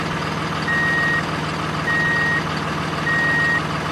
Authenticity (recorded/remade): recorded